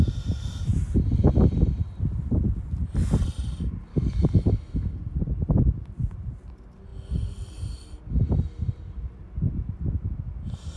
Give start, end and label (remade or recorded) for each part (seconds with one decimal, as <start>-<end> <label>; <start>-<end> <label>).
0.0-3.9 recorded; 3.9-4.5 remade; 4.5-10.8 recorded